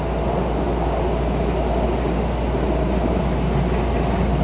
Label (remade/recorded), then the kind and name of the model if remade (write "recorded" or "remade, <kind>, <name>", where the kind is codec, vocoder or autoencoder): recorded